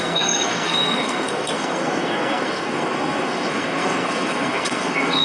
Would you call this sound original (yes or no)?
no